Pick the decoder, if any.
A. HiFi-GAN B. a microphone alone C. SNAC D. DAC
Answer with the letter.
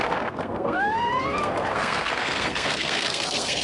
C